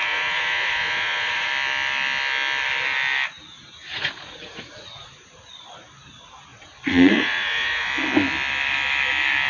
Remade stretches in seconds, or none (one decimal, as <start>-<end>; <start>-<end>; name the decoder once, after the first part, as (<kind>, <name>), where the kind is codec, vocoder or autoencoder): 0.0-1.5 (vocoder, Vocos); 3.9-5.6; 6.5-7.9